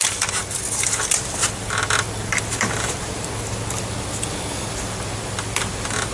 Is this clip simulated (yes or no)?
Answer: no